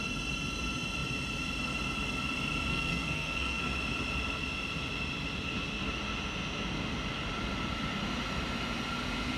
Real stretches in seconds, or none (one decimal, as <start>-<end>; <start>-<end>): 0.0-2.7; 3.6-9.4